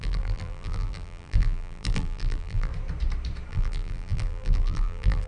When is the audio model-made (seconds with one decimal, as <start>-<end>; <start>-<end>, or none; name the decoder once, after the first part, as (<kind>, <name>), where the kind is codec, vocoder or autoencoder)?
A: 0.0-2.7 (vocoder, BigVGAN v2); 3.5-5.3